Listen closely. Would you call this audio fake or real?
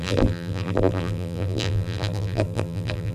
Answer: fake